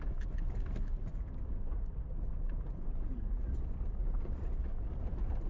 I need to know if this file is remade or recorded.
recorded